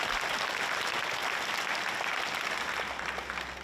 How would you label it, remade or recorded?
recorded